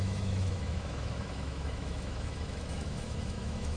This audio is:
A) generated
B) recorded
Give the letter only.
A